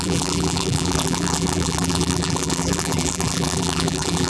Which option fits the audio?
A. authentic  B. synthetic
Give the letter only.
B